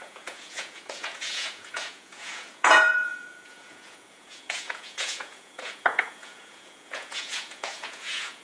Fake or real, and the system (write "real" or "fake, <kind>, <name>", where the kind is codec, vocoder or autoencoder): fake, vocoder, Vocos